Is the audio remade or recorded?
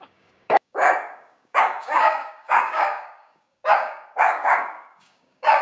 remade